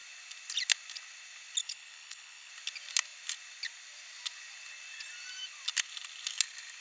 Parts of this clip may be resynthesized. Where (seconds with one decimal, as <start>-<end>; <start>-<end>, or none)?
1.6-2.5